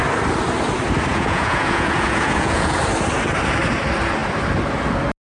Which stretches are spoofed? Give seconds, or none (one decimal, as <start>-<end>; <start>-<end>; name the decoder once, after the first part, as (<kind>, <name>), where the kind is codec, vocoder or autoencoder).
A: 1.1-2.8 (vocoder, Vocos)